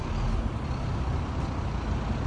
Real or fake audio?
real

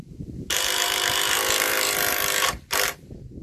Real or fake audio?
fake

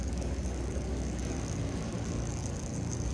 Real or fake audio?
fake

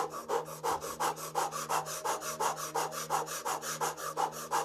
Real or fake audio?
real